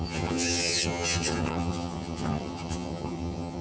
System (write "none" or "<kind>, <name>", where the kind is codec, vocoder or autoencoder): vocoder, HiFi-GAN